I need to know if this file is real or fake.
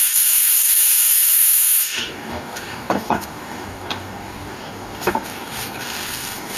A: fake